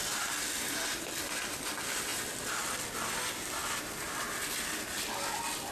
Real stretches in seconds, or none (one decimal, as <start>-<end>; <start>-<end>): 1.6-5.7